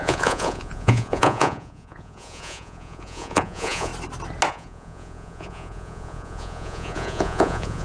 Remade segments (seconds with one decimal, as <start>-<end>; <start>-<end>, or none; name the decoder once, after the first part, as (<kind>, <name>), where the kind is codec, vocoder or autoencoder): 0.0-3.9 (vocoder, Vocos); 4.5-7.8